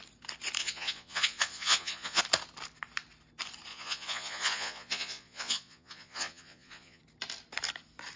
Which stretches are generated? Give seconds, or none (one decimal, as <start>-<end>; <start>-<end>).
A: 0.6-2.2; 3.7-7.0